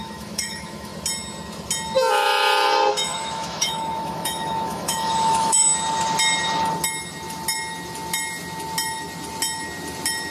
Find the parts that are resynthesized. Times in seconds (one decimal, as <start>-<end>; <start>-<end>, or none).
0.0-0.9; 2.9-5.7